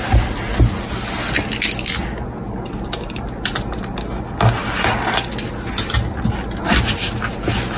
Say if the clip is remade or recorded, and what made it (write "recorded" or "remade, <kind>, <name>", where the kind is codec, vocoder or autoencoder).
recorded